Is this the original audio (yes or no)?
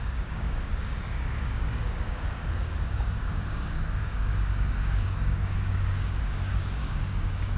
no